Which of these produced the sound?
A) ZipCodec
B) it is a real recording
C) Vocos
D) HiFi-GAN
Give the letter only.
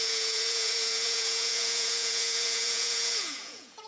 C